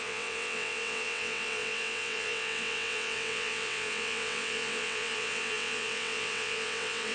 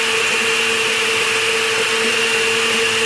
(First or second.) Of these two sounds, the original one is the second